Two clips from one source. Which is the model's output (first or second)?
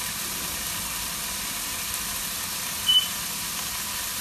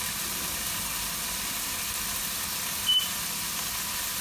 first